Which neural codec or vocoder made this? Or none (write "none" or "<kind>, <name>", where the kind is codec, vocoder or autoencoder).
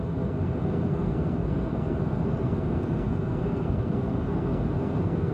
codec, SNAC